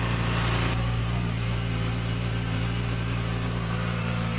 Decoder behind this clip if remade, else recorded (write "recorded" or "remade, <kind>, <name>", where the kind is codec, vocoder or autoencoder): remade, vocoder, BigVGAN v2